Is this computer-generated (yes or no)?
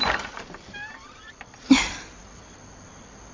yes